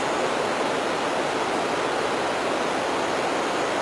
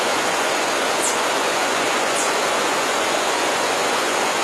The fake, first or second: second